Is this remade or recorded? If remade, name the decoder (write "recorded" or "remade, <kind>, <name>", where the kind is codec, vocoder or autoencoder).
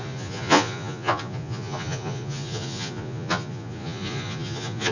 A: remade, vocoder, Vocos